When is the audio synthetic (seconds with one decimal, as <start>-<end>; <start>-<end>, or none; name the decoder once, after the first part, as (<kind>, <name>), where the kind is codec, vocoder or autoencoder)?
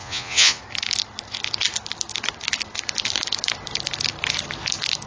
0.0-0.6 (vocoder, Vocos)